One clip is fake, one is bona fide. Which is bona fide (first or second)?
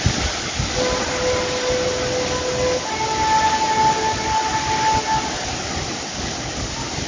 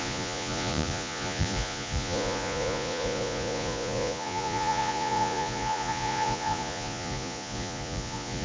first